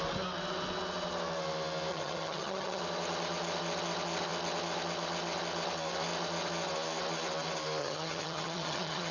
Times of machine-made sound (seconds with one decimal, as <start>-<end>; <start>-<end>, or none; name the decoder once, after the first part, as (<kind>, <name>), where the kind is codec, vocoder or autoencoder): 1.9-2.8 (vocoder, HiFi-GAN); 7.8-9.1